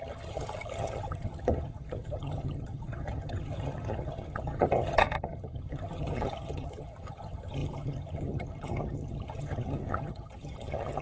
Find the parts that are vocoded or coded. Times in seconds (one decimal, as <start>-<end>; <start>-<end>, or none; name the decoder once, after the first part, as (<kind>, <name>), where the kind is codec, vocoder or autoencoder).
0.0-11.0 (vocoder, HiFi-GAN)